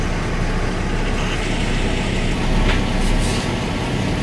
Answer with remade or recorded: recorded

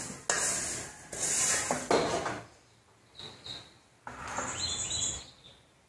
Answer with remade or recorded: recorded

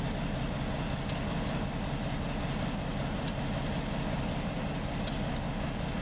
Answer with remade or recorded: recorded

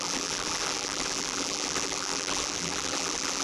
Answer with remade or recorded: remade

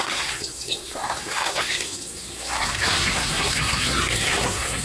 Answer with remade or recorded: remade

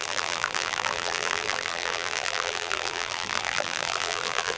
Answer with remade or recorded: remade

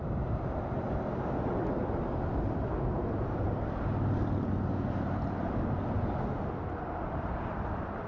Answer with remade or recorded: recorded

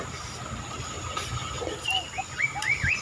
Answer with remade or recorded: recorded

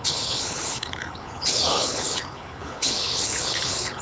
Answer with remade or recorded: remade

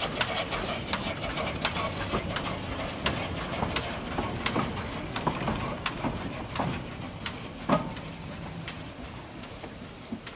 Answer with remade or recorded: recorded